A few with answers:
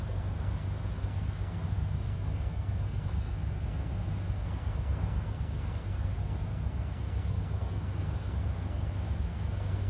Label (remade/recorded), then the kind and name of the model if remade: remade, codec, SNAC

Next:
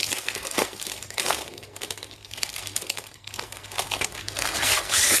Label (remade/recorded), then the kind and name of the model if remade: remade, codec, SNAC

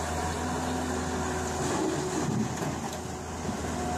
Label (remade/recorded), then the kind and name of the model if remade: recorded